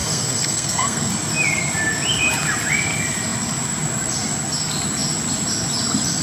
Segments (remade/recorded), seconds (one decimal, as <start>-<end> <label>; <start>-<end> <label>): 0.0-1.1 remade; 1.1-6.2 recorded